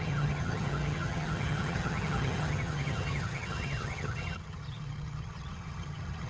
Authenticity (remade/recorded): remade